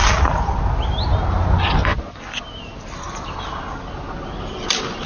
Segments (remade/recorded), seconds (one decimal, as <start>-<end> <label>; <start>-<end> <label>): 0.0-5.1 recorded